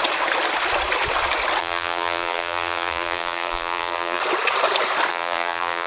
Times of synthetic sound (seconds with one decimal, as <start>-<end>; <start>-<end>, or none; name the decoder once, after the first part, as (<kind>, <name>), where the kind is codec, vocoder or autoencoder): 1.6-4.2 (vocoder, BigVGAN v2); 5.1-5.9